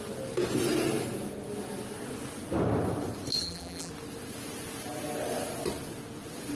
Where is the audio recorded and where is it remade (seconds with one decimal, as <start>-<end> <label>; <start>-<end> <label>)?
0.0-3.4 recorded; 3.4-3.9 remade; 3.9-6.5 recorded